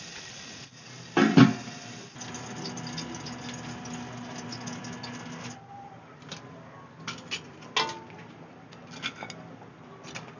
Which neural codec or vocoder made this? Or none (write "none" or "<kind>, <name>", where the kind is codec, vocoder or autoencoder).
none